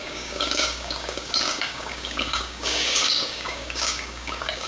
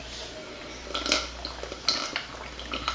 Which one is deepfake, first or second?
first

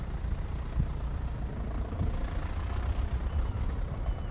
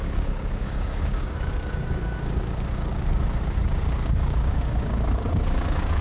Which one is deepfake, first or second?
second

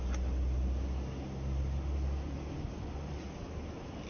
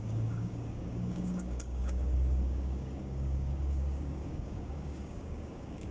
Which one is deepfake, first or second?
second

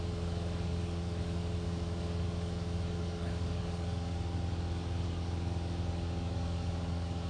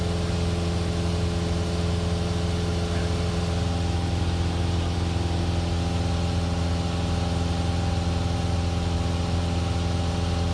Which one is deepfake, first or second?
first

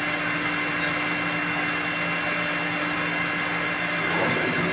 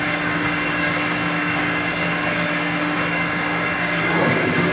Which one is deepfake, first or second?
second